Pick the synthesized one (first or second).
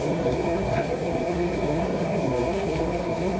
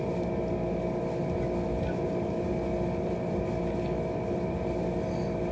first